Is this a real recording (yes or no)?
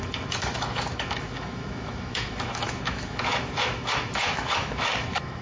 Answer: no